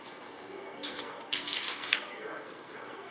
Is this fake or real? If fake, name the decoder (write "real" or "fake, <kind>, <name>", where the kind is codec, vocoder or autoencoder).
fake, codec, SNAC